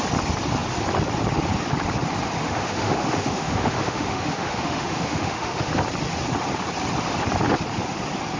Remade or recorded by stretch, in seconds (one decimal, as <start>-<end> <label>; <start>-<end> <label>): 0.0-2.4 recorded; 2.4-5.7 remade; 5.7-8.4 recorded